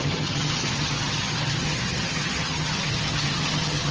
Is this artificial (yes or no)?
yes